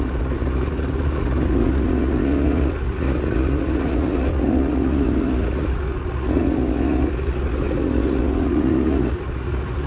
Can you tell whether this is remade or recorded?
remade